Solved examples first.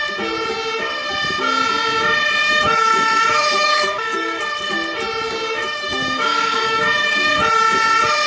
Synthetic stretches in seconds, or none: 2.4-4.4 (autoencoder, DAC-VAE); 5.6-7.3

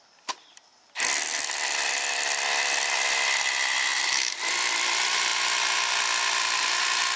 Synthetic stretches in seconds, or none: none

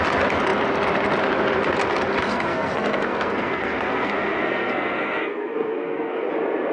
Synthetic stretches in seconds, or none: 2.3-6.3 (codec, SNAC)